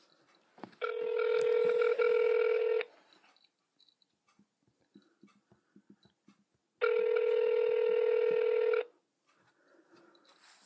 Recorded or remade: recorded